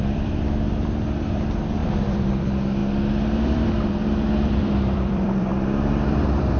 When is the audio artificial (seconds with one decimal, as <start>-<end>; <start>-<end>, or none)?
0.0-2.8; 3.4-5.5; 6.1-6.6